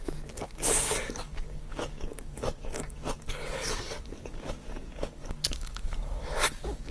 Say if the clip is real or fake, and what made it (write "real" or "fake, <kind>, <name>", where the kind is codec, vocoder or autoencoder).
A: fake, codec, DAC